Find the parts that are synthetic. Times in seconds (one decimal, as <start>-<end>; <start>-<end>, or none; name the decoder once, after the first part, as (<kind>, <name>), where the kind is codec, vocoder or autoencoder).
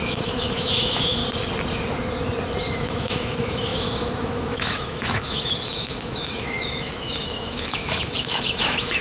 0.0-1.2 (autoencoder, DAC-VAE); 2.8-9.0